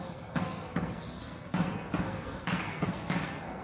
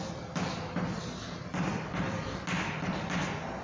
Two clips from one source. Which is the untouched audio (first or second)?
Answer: second